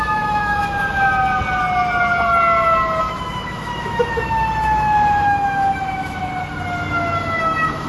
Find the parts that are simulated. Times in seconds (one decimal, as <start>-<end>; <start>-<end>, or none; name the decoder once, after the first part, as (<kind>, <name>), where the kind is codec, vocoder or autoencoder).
0.0-0.8 (autoencoder, DAC-VAE); 3.0-6.3; 7.4-7.9

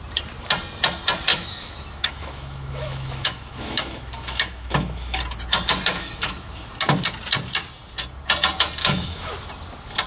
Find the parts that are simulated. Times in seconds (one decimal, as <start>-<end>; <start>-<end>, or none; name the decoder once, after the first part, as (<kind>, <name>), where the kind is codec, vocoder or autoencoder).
1.3-5.2 (autoencoder, DAC-VAE); 5.9-6.7; 8.8-9.3

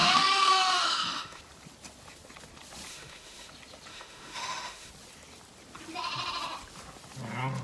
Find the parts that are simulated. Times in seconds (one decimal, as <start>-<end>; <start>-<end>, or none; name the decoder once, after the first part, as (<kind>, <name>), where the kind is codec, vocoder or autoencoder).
0.0-1.4 (autoencoder, DAC-VAE); 2.9-3.5; 3.9-4.9

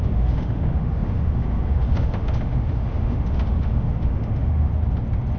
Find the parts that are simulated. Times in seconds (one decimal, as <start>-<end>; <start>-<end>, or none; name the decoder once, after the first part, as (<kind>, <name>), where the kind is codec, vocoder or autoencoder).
0.0-4.7 (autoencoder, DAC-VAE)

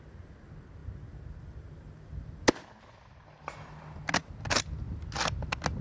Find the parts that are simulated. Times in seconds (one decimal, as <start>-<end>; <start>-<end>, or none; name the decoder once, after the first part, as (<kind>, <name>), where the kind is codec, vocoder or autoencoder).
none

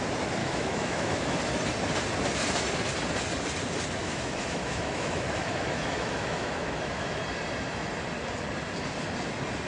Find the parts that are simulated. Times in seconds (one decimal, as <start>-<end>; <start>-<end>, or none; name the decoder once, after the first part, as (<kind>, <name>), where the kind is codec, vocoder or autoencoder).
0.4-1.4 (autoencoder, DAC-VAE); 4.0-7.2